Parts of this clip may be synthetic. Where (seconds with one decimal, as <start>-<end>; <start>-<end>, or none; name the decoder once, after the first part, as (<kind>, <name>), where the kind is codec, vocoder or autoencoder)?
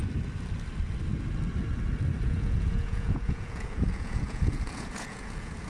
2.2-5.7 (vocoder, Vocos)